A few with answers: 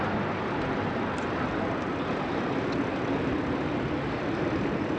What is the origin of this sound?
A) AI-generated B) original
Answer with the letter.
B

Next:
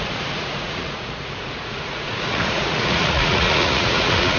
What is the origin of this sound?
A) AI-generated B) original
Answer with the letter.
A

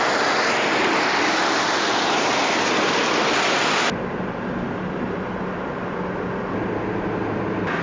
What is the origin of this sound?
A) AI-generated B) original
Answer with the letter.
B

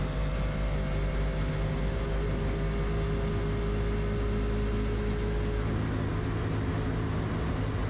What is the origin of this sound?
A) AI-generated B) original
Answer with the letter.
B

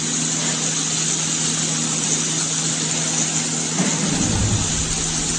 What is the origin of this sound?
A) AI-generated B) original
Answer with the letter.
B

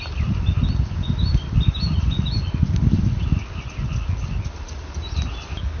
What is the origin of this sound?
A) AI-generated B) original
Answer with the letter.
B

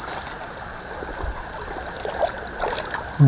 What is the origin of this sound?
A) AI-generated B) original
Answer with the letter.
B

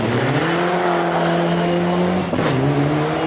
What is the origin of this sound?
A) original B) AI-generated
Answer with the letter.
A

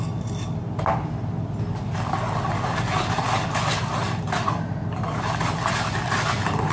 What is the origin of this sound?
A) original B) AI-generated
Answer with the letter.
A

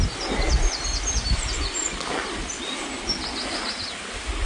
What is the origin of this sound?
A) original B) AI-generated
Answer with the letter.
A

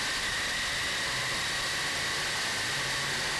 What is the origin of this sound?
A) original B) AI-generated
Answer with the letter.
A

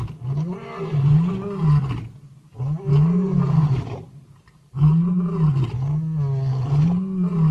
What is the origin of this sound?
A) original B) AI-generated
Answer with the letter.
A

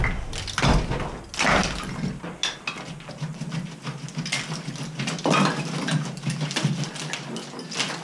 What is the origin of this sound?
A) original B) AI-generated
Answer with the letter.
A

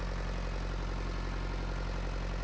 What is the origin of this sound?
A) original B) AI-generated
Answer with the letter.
A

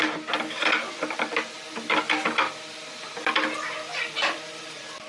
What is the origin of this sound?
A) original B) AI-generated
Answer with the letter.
A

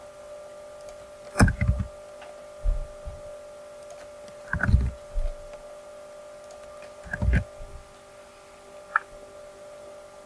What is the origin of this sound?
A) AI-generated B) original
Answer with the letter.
B